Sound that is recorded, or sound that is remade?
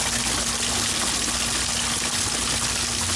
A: recorded